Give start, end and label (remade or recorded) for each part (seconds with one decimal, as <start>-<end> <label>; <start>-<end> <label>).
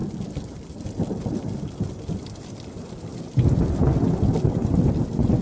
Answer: 0.0-5.4 recorded